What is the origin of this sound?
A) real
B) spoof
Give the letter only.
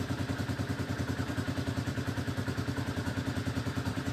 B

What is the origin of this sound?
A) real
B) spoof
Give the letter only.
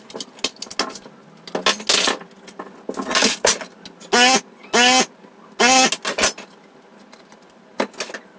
A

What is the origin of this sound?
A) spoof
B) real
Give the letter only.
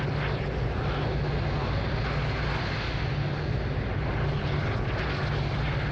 B